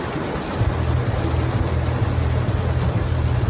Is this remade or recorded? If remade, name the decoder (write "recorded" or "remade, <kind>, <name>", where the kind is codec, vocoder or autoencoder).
recorded